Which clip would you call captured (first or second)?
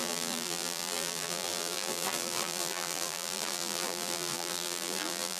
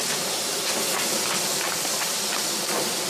second